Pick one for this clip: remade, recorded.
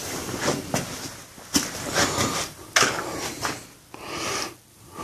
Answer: recorded